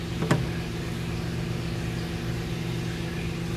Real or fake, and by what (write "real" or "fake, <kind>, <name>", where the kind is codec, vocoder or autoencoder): real